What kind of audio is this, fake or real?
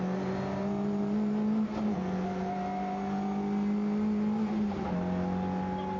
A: real